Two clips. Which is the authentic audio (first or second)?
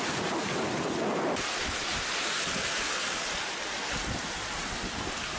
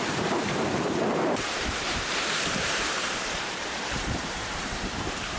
first